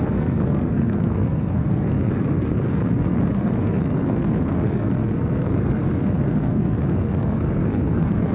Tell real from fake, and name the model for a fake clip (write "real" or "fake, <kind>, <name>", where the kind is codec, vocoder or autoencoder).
fake, codec, SNAC